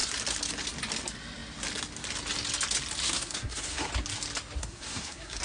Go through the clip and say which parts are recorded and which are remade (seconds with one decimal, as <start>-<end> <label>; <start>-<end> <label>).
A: 0.0-3.0 recorded; 3.0-3.9 remade; 3.9-4.6 recorded; 4.6-5.4 remade